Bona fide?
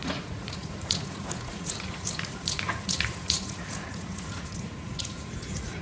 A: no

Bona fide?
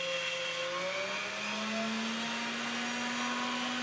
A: yes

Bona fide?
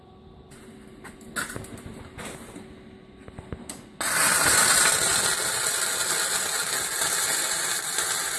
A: yes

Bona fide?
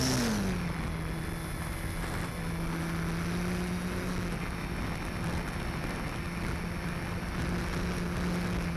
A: yes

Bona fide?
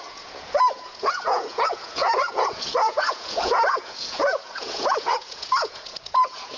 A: no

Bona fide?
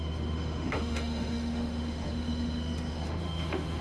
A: no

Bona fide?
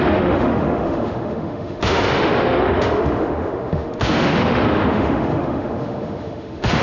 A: no